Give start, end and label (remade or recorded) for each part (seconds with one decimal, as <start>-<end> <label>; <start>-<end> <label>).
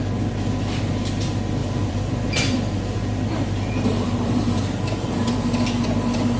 0.0-1.6 recorded; 1.6-5.4 remade; 5.4-6.4 recorded